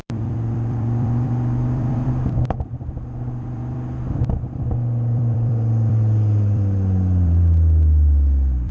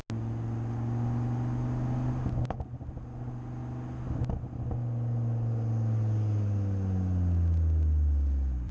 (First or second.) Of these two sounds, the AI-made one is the first